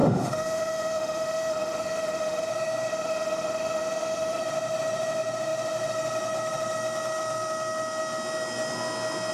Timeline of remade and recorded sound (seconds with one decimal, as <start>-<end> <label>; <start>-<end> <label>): 0.0-2.5 remade; 2.5-2.9 recorded; 2.9-4.4 remade; 4.4-9.3 recorded